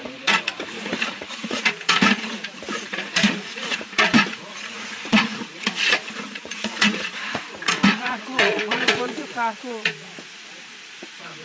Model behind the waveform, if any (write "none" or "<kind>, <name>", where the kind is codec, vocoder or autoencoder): vocoder, Vocos